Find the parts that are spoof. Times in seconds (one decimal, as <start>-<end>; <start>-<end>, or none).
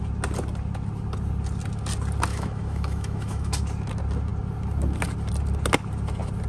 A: 2.3-3.6